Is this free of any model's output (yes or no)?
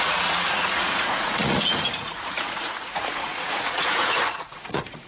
no